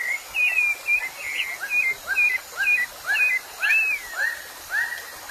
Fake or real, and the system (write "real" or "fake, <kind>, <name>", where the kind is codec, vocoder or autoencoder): real